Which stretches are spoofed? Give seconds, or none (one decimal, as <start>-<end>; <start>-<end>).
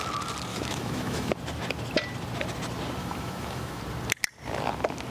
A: 0.5-1.3; 3.0-3.8